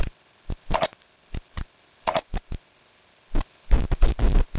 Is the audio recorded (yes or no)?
no